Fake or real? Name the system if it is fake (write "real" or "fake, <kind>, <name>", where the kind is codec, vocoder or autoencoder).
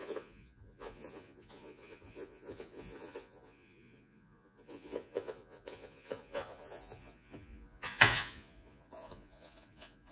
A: fake, vocoder, Vocos